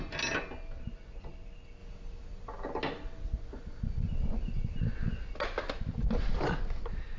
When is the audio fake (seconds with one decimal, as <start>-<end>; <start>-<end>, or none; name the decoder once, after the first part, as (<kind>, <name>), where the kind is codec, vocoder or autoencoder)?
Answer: none